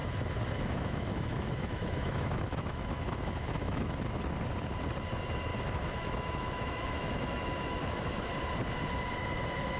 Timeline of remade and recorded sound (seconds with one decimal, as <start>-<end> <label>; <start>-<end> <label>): 0.0-4.2 remade; 4.2-5.5 recorded; 5.5-8.3 remade; 8.3-9.8 recorded